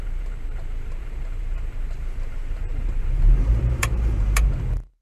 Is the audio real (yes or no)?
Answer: no